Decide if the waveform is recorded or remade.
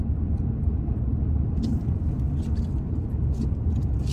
recorded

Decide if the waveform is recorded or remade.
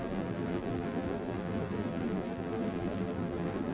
remade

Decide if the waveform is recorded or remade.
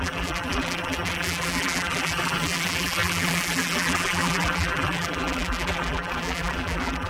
remade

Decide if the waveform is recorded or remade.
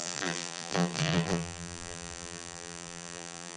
remade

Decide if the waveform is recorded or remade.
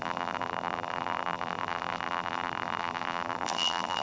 remade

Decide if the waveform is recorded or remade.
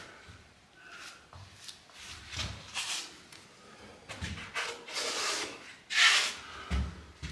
recorded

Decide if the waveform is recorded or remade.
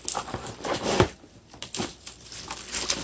remade